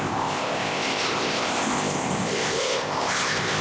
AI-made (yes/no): yes